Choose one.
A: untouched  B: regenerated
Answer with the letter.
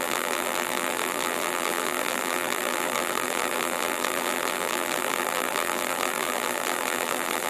B